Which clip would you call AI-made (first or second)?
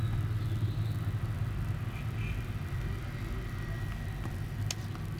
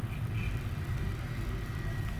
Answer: second